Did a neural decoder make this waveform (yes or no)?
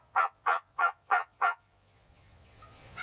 yes